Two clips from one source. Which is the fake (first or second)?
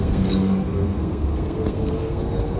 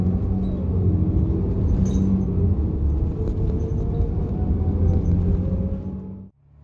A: first